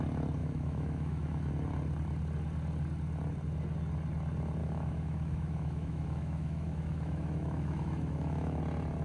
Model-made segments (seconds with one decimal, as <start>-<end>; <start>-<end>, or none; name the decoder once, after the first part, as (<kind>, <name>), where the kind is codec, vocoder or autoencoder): 0.4-1.5 (autoencoder, DAC-VAE); 4.6-8.6